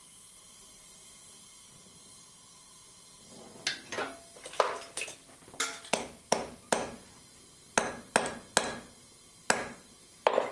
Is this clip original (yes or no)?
yes